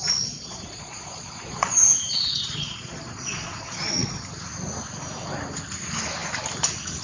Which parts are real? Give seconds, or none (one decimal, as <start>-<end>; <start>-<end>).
4.2-7.0